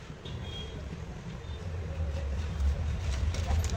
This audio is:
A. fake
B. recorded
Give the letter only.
A